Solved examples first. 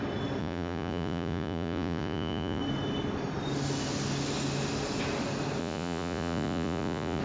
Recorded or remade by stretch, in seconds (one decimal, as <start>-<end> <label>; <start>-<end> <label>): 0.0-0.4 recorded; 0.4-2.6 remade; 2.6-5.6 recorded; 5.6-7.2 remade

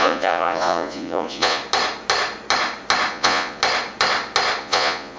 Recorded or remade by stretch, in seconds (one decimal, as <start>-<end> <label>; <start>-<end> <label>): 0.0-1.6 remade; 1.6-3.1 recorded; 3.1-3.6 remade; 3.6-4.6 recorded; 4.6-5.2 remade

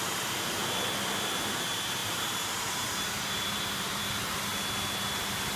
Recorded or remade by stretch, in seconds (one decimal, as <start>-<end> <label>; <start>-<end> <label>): 0.0-0.6 remade; 0.6-1.5 recorded; 1.5-4.5 remade; 4.5-5.6 recorded